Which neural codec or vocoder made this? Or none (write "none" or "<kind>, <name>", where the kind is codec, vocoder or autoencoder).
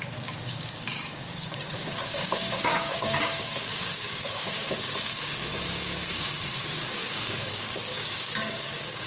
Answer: codec, DAC